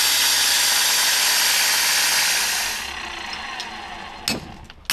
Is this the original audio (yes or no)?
yes